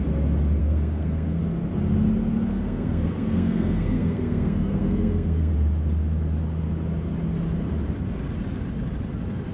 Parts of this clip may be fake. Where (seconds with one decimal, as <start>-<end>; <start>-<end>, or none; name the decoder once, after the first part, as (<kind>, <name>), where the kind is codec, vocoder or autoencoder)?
0.6-1.4 (codec, SNAC); 2.5-5.5